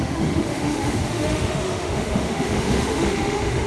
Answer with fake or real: fake